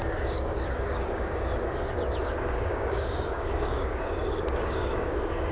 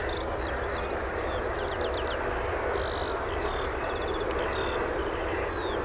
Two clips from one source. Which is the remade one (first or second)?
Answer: first